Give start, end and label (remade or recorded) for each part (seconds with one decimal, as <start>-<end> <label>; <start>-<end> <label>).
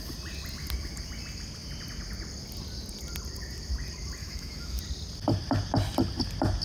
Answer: 0.0-4.2 recorded; 4.2-4.8 remade; 4.8-6.6 recorded